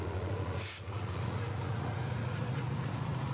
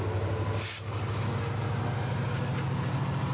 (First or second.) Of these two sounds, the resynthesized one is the first